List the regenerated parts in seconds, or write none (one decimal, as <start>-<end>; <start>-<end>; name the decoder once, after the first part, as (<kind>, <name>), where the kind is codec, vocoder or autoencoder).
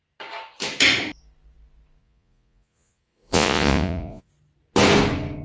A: 2.0-4.3 (vocoder, Vocos)